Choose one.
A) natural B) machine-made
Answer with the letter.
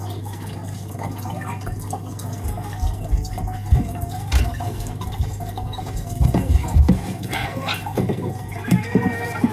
B